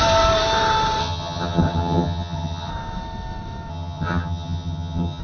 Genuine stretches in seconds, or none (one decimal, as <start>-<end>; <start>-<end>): 0.0-1.0; 2.7-3.7